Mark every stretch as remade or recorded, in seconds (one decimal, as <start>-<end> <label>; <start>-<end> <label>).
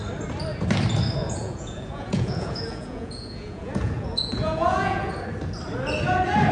0.0-1.2 recorded; 1.2-5.1 remade; 5.1-6.5 recorded